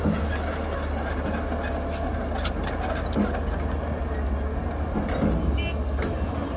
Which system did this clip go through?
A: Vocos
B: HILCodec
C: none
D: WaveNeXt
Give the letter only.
C